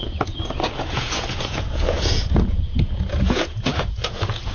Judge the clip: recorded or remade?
remade